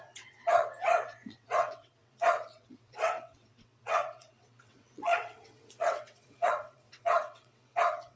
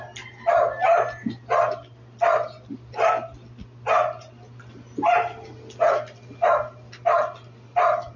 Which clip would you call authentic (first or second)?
second